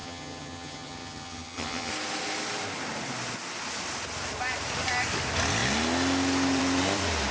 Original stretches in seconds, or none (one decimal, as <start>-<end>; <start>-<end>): 1.9-7.3

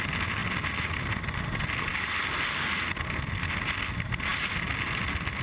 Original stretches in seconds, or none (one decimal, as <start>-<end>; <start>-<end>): 0.0-5.4

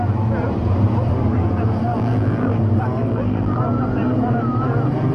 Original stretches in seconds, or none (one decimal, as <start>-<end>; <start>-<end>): 0.0-1.9; 2.6-3.0; 3.6-5.1